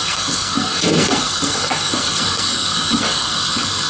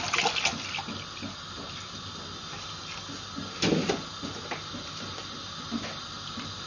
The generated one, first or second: first